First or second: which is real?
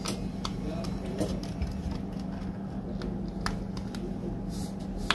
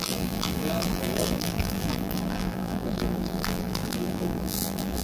first